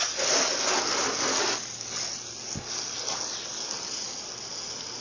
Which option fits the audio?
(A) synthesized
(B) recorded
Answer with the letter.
B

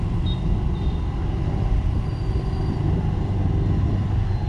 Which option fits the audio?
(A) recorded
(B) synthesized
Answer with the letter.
A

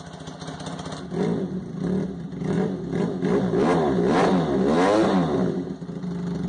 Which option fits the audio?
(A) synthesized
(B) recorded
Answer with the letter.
B